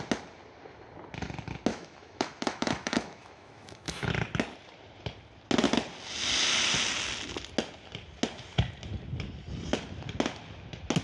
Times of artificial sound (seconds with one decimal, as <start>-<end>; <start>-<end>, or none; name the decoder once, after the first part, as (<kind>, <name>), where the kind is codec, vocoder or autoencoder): 1.7-4.1 (autoencoder, DAC-VAE)